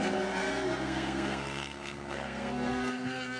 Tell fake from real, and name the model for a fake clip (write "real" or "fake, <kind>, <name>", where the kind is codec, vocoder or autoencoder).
fake, codec, SNAC